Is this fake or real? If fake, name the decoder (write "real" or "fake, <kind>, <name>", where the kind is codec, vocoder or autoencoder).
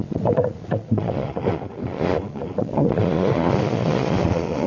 fake, vocoder, Vocos